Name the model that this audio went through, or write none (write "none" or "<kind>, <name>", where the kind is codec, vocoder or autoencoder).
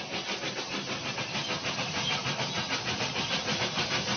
none